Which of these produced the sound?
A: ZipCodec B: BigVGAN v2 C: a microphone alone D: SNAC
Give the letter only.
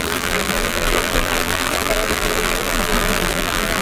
B